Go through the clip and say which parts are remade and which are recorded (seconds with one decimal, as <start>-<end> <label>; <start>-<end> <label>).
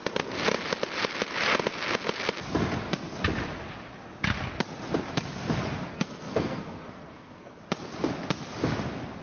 0.0-5.9 recorded; 5.9-7.6 remade; 7.6-9.2 recorded